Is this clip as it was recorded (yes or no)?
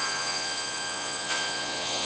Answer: no